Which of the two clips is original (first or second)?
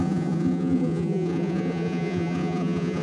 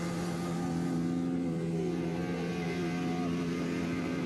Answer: second